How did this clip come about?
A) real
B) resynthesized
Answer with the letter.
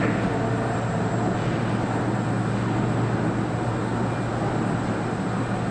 A